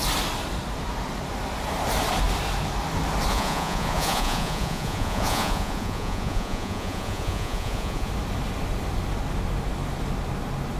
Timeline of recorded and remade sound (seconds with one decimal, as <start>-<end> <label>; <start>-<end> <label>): 0.0-3.3 recorded; 3.3-8.1 remade; 8.1-10.8 recorded